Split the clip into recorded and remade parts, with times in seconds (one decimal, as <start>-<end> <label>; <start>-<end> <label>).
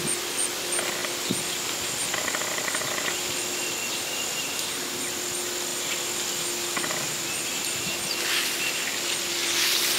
0.0-10.0 recorded